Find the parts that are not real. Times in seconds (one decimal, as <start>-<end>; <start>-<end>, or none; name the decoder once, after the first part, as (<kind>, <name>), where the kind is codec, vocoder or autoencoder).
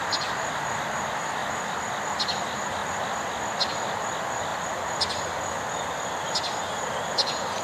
none